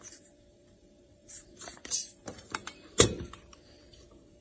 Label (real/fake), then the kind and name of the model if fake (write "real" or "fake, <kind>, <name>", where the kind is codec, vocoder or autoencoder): fake, vocoder, BigVGAN v2